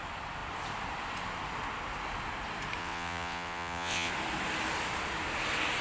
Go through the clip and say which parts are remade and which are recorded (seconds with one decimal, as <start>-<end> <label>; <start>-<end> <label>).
0.0-2.8 recorded; 2.8-4.1 remade; 4.1-5.8 recorded